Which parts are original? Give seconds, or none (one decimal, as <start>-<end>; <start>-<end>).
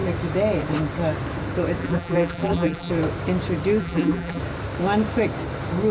0.0-1.8; 2.9-3.8; 4.4-5.9